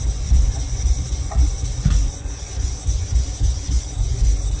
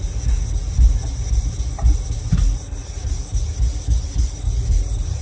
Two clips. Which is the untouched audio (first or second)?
second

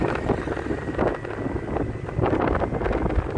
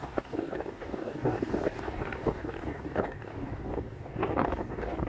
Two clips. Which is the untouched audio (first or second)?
first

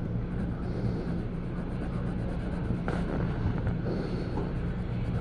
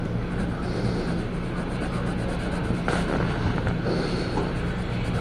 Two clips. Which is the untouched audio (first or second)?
second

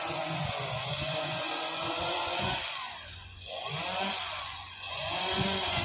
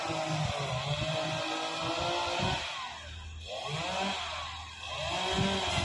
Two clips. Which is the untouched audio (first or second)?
second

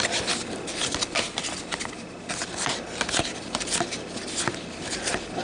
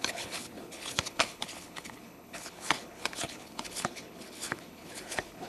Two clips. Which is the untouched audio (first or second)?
first